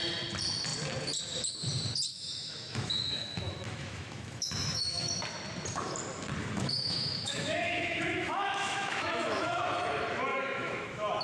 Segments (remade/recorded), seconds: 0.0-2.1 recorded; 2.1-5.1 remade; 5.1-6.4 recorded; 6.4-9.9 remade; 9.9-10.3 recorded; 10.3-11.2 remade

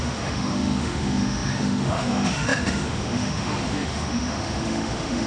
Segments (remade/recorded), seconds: 0.0-5.3 remade

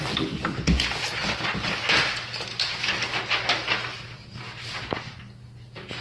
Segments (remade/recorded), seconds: 0.0-6.0 recorded

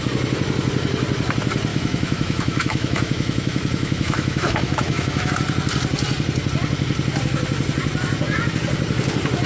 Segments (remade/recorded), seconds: 0.0-1.7 recorded; 1.7-5.3 remade; 5.3-9.5 recorded

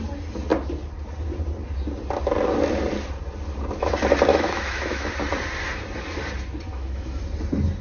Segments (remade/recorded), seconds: 0.0-4.3 recorded; 4.3-5.1 remade; 5.1-6.7 recorded; 6.7-7.2 remade; 7.2-7.8 recorded

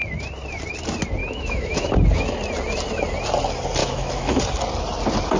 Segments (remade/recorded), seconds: 0.0-1.2 recorded; 1.2-1.9 remade; 1.9-3.8 recorded; 3.8-4.4 remade; 4.4-5.4 recorded